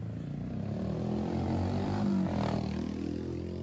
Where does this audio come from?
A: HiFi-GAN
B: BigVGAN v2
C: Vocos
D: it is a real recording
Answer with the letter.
D